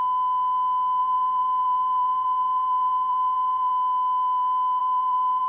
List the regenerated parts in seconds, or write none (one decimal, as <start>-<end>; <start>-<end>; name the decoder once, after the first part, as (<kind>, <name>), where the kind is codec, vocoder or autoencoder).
1.0-3.7 (vocoder, Vocos); 4.8-5.5